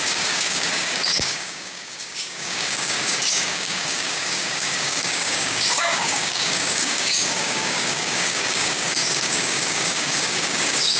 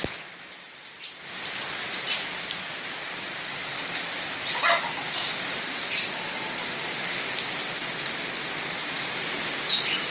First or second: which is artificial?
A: first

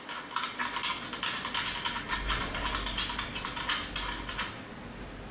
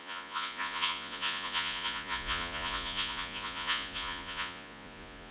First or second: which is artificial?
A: second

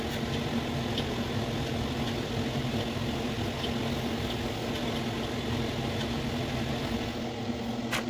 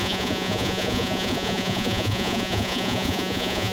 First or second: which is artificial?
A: second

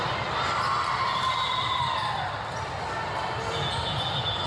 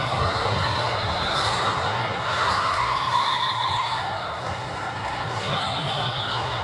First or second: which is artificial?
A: second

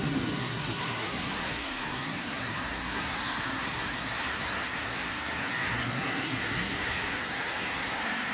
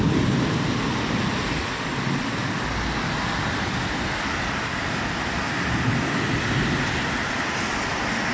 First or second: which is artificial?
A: first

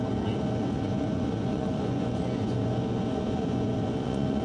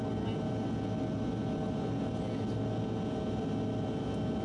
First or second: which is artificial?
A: first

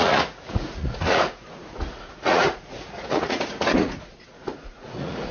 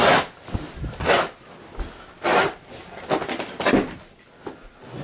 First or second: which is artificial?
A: first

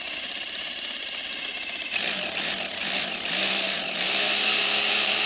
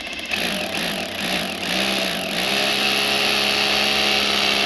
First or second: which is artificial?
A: first